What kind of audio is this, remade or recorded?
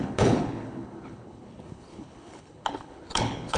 remade